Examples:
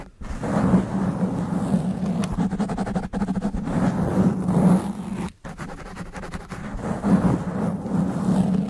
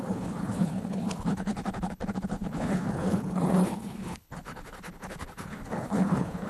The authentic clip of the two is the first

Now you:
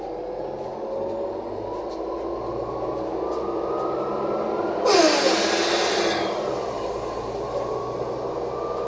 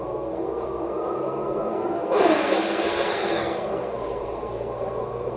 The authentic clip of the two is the first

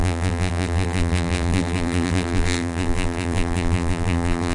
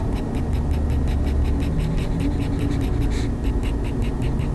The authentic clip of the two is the second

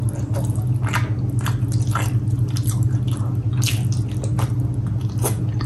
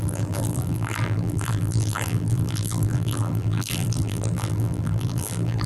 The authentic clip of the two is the first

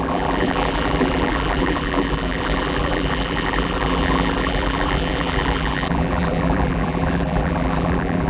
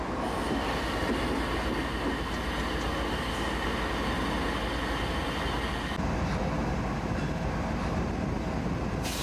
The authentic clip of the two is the second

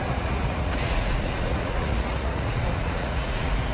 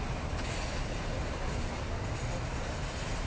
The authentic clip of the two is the second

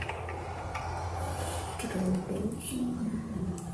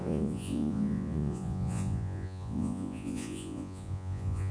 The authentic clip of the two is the first